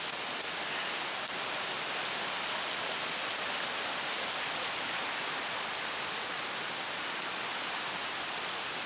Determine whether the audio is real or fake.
real